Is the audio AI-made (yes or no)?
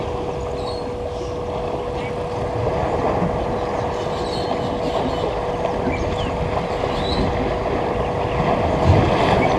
no